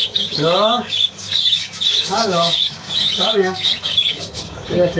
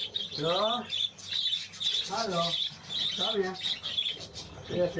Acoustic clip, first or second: second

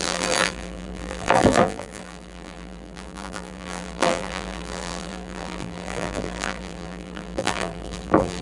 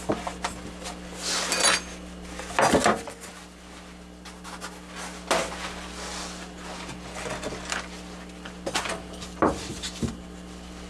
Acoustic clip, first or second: second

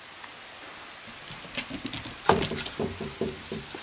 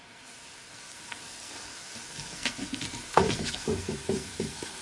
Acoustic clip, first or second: first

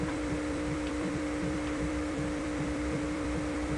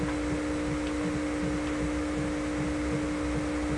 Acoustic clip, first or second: second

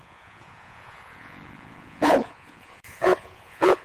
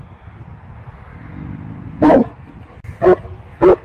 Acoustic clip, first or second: second